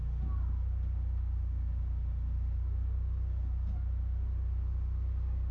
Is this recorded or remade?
recorded